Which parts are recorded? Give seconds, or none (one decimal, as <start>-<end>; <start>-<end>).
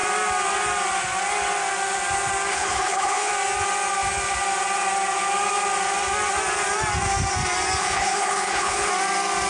0.0-2.5; 3.3-7.8; 8.9-9.5